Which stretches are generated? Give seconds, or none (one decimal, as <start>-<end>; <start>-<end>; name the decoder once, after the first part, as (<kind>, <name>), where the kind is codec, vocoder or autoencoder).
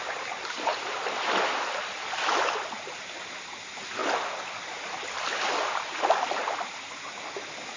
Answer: none